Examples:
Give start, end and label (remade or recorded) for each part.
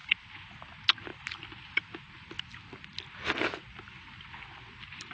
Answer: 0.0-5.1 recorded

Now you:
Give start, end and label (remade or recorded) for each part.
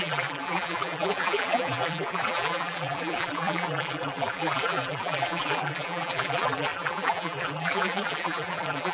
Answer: 0.0-8.9 remade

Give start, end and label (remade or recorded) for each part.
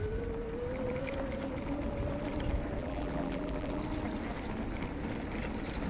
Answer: 0.0-2.8 recorded; 2.8-3.8 remade; 3.8-5.9 recorded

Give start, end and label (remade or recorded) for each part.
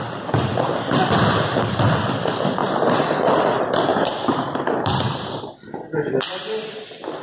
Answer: 0.0-3.9 recorded; 3.9-6.1 remade; 6.1-7.2 recorded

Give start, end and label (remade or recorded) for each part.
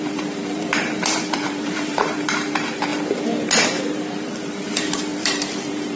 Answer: 0.0-2.9 remade; 2.9-3.8 recorded; 3.8-6.0 remade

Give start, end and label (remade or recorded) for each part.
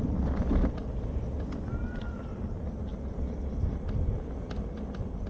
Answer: 0.0-2.9 recorded; 2.9-3.5 remade; 3.5-5.3 recorded